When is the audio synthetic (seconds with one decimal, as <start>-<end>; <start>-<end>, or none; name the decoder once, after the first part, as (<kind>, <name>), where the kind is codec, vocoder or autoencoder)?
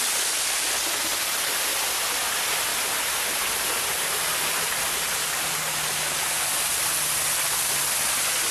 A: 2.7-6.9 (vocoder, BigVGAN v2)